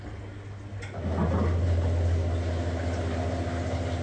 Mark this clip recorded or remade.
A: recorded